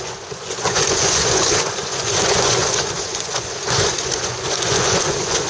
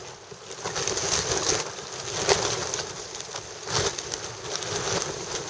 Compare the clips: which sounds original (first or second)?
second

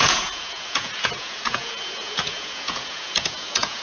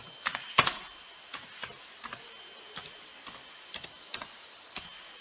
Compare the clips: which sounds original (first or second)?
second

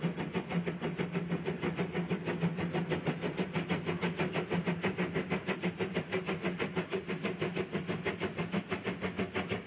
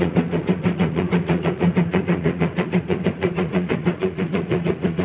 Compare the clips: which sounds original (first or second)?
first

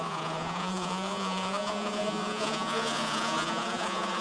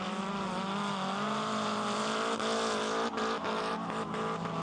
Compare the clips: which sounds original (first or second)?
second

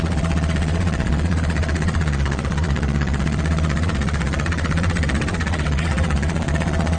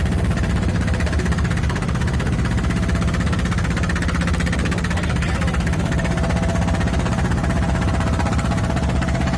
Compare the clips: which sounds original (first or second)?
second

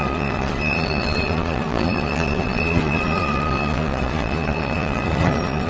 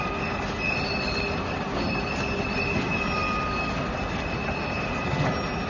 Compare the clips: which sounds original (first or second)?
second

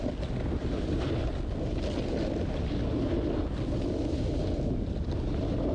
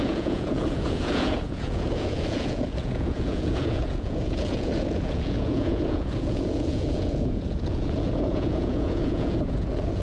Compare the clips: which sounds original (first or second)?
first